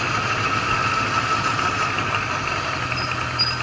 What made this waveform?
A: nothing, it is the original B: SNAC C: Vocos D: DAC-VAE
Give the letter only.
A